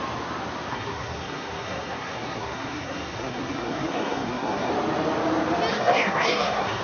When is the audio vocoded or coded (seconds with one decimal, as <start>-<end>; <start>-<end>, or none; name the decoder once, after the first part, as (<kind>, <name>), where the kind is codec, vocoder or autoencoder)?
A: 0.7-4.7 (codec, SNAC); 5.7-6.8